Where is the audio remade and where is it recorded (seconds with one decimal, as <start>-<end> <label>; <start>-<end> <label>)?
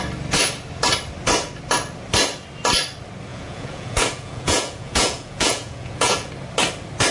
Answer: 0.0-3.3 recorded; 3.3-6.3 remade; 6.3-7.1 recorded